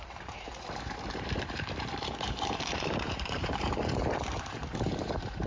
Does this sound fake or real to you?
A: fake